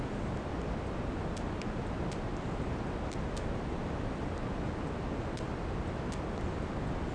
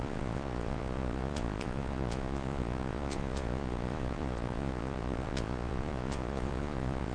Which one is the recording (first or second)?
first